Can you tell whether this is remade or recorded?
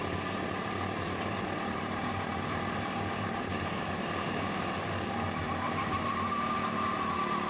remade